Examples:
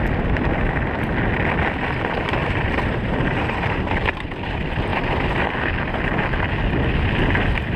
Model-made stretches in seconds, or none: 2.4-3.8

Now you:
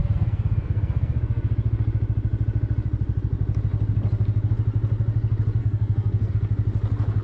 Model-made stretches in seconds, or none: 0.0-1.5; 5.6-6.3

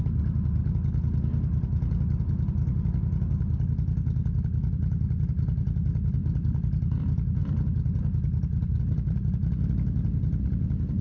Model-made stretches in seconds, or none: 6.2-7.0; 7.4-8.8